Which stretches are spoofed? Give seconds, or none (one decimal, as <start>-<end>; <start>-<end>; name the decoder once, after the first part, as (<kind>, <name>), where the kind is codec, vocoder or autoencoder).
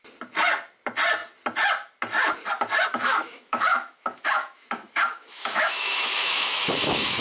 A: 2.9-7.2 (autoencoder, DAC-VAE)